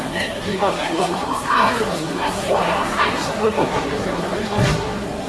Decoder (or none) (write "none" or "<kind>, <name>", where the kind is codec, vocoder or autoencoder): codec, SNAC